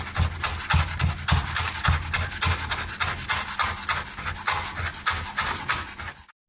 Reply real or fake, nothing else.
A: real